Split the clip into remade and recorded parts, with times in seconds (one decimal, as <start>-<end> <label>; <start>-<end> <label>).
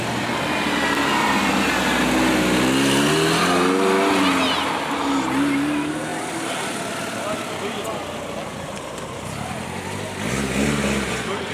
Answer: 0.0-11.5 recorded